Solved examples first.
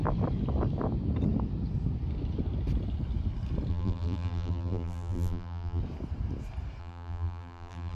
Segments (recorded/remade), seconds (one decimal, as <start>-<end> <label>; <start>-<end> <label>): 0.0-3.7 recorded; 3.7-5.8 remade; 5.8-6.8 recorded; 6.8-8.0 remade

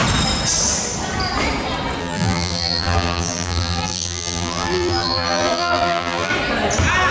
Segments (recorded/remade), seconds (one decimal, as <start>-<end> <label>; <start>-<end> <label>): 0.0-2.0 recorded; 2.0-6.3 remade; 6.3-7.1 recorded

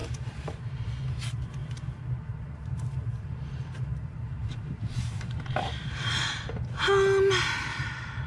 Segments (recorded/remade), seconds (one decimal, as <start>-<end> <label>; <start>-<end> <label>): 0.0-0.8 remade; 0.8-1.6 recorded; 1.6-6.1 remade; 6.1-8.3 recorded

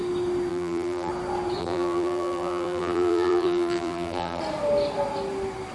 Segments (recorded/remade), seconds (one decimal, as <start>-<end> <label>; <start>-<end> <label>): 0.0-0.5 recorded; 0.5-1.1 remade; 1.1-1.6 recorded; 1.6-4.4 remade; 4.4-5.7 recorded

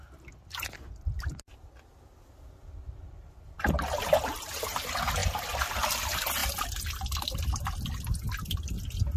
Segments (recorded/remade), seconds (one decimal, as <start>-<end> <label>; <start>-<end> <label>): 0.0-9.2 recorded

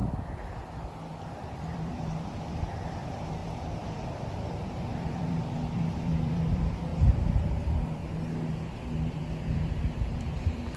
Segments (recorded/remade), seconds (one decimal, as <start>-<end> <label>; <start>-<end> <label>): 0.0-1.3 recorded; 1.3-6.9 remade; 6.9-7.6 recorded; 7.6-8.0 remade; 8.0-9.1 recorded; 9.1-10.8 remade

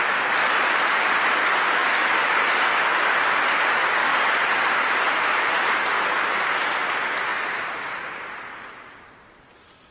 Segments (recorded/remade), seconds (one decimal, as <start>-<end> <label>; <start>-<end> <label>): 0.0-4.1 recorded; 4.1-6.3 remade; 6.3-9.9 recorded

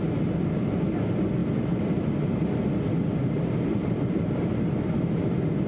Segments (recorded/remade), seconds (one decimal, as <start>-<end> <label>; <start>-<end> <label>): 0.0-1.4 recorded; 1.4-3.1 remade; 3.1-5.7 recorded